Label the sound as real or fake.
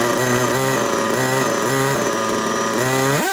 real